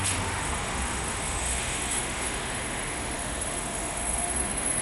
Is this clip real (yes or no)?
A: no